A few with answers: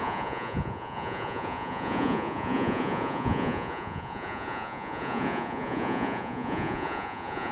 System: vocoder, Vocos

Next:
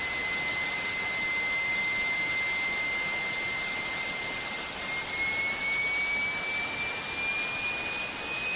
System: none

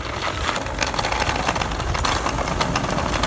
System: none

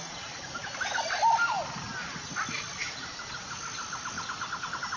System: none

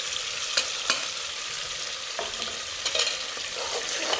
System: none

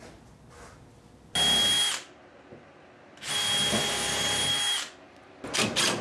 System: none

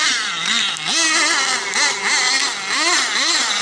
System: none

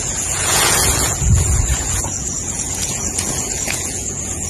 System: vocoder, Vocos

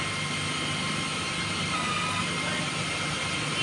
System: none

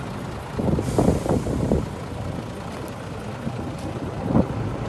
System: none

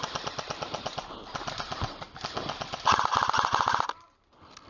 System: none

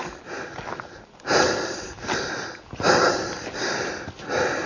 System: none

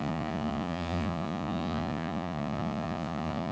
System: vocoder, Vocos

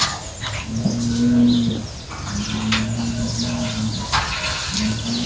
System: none